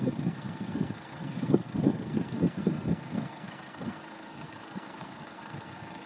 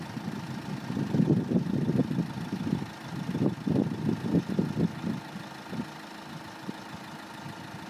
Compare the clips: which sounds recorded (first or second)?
second